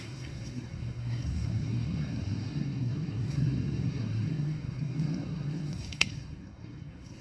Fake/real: fake